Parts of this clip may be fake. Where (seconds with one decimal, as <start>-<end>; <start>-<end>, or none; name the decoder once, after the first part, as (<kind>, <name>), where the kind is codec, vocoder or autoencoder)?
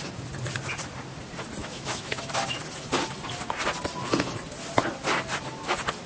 1.6-2.2 (autoencoder, DAC-VAE)